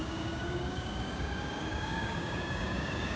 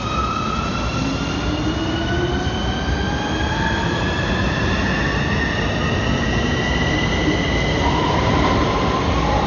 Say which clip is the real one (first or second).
second